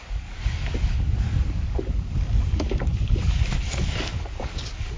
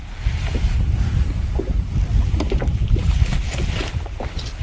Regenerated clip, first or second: first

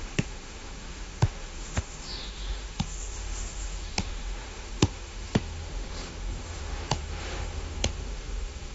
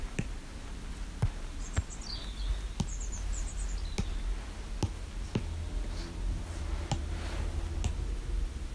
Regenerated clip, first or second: first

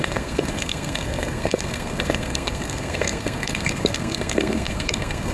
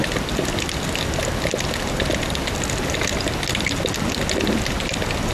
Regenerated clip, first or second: first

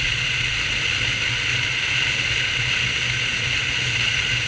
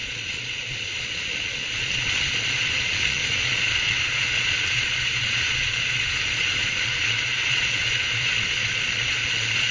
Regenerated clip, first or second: second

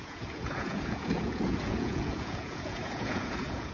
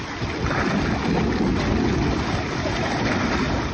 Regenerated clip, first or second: first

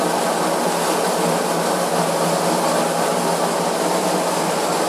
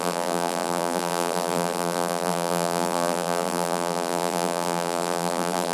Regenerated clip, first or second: second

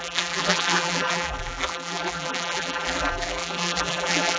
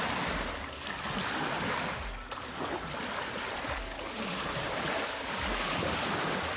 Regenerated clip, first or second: first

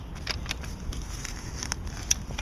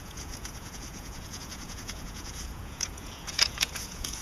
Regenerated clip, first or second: second